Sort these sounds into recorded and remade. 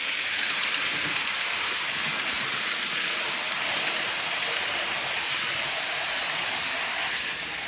remade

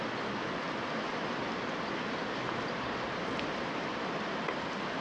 recorded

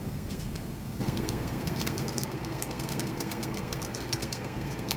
remade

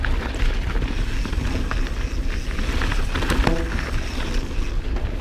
recorded